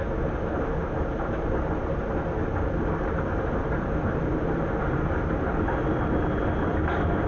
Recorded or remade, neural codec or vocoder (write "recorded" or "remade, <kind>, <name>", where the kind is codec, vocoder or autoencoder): recorded